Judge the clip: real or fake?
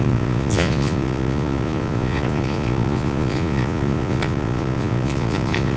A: fake